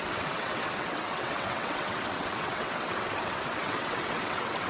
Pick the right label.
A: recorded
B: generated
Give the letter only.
B